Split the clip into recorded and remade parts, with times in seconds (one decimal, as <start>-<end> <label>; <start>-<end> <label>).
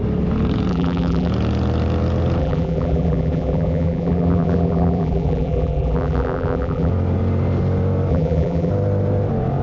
0.0-0.7 recorded; 0.7-1.3 remade; 1.3-2.4 recorded; 2.4-6.9 remade; 6.9-8.1 recorded; 8.1-8.7 remade; 8.7-9.6 recorded